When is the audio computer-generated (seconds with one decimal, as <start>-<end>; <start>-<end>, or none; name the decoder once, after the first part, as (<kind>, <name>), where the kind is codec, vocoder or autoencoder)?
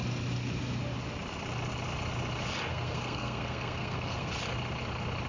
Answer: 2.7-4.3 (codec, SNAC)